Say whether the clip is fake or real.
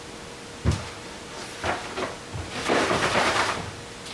fake